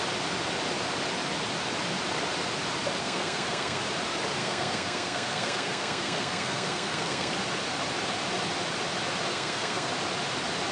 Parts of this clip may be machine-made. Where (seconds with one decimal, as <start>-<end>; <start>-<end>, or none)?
3.0-3.8; 4.4-7.3; 9.3-9.9